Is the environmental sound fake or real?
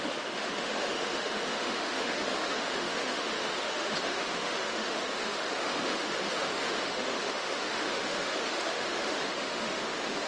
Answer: fake